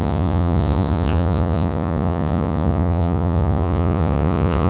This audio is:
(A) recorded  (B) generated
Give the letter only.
B